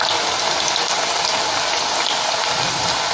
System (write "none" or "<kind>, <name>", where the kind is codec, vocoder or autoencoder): none